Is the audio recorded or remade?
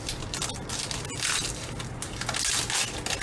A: recorded